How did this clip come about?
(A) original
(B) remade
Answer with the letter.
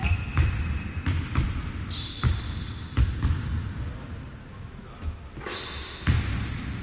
A